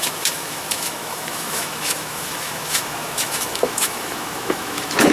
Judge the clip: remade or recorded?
remade